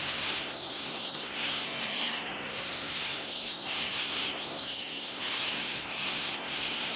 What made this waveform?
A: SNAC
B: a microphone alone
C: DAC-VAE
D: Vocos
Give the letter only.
A